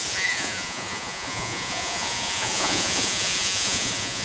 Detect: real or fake fake